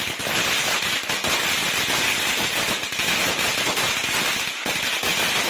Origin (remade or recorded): recorded